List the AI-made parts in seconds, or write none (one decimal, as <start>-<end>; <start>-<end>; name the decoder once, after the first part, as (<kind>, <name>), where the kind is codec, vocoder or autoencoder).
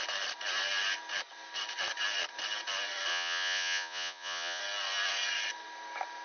3.1-4.6 (vocoder, Vocos)